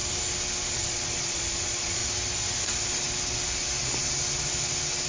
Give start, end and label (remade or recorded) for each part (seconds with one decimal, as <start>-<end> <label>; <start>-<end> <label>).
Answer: 0.0-0.7 recorded; 0.7-2.0 remade; 2.0-5.1 recorded

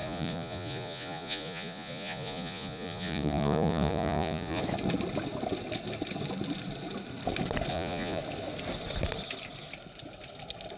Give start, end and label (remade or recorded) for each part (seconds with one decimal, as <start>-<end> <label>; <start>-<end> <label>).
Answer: 0.0-4.6 remade; 4.6-7.7 recorded; 7.7-8.2 remade; 8.2-10.8 recorded

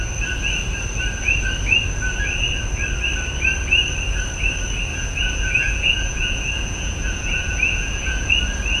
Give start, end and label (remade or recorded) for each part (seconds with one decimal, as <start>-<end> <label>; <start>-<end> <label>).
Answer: 0.0-4.9 recorded; 4.9-8.3 remade; 8.3-8.8 recorded

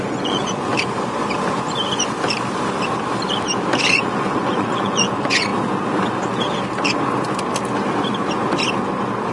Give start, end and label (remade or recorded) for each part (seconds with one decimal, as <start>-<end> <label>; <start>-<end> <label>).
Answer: 0.0-0.7 remade; 0.7-3.9 recorded; 3.9-5.5 remade; 5.5-9.3 recorded

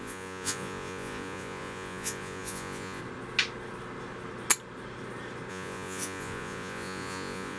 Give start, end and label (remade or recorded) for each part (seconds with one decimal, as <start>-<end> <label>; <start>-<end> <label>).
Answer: 0.0-3.0 remade; 3.0-5.5 recorded; 5.5-7.6 remade

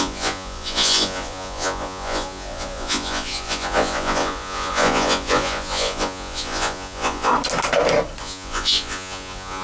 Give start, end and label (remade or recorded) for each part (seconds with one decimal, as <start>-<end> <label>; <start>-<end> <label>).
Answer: 0.0-7.3 remade; 7.3-8.2 recorded; 8.2-9.6 remade

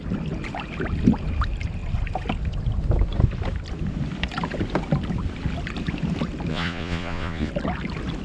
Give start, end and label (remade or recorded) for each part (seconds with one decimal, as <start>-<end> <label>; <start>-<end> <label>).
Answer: 0.0-6.5 recorded; 6.5-7.5 remade; 7.5-8.2 recorded

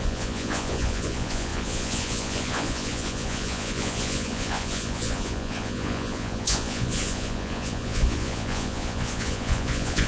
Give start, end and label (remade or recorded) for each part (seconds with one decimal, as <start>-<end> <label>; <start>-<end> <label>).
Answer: 0.0-10.1 remade